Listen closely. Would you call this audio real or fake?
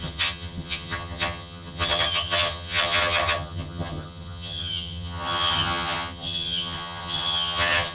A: fake